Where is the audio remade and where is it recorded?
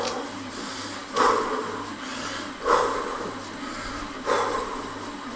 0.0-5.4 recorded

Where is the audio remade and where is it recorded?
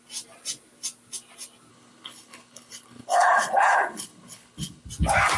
0.0-1.7 recorded; 1.7-4.9 remade; 4.9-5.4 recorded